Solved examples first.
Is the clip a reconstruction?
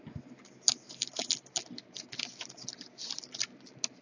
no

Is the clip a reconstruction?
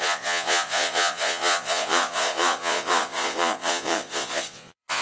yes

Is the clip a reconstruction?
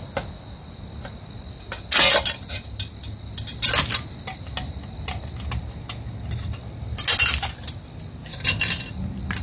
no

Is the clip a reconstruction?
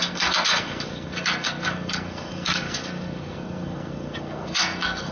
yes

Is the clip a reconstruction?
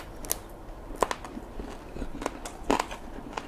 no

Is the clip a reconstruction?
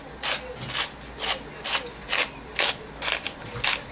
no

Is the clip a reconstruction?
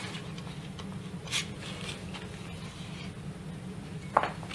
no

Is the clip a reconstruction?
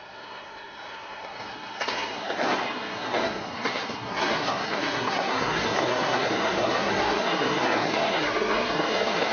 yes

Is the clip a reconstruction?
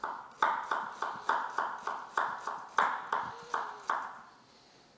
no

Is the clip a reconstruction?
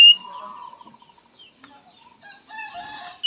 no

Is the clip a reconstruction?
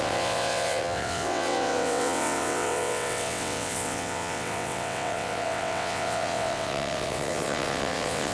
yes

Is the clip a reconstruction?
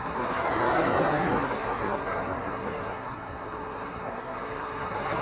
yes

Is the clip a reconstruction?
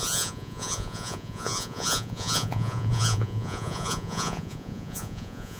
yes